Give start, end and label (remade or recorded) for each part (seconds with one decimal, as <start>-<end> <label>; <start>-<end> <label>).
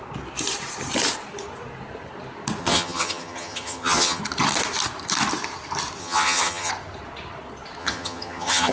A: 0.0-2.6 recorded; 2.6-4.2 remade; 4.2-6.0 recorded; 6.0-6.7 remade; 6.7-7.8 recorded; 7.8-8.7 remade